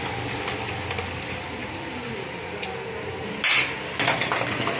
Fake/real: real